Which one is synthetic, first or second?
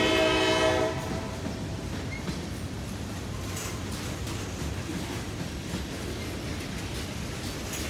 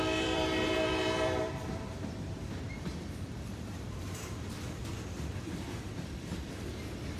second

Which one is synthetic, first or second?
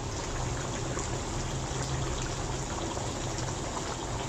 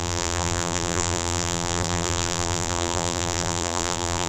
second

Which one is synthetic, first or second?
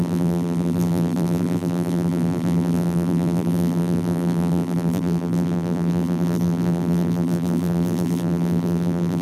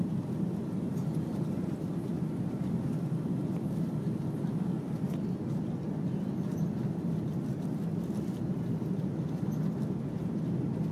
first